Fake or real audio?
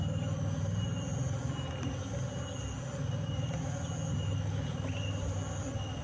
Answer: real